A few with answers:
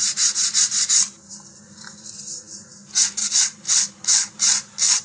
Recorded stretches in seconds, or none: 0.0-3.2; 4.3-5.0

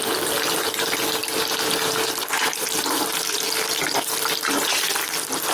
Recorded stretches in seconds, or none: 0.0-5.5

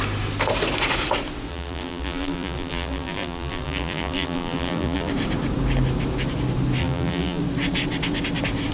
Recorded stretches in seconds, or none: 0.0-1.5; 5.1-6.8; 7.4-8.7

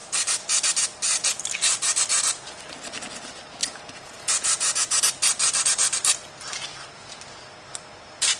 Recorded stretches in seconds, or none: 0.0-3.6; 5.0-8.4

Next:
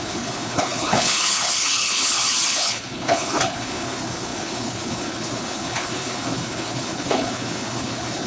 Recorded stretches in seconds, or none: none